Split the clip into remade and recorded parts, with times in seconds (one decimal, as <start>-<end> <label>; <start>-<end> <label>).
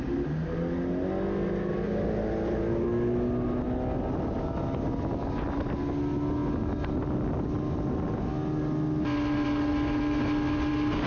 0.0-11.1 recorded